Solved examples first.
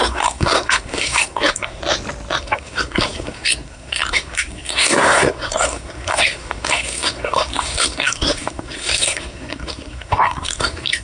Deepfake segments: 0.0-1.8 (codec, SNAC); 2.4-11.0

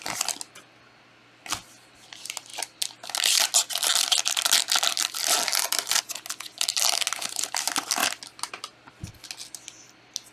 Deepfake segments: none